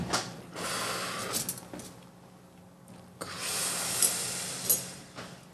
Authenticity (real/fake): real